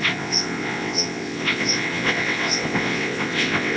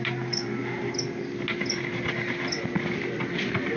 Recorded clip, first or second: second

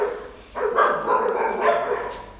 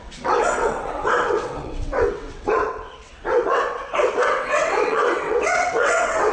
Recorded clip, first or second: first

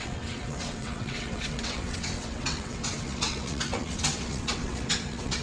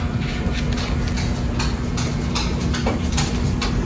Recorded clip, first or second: second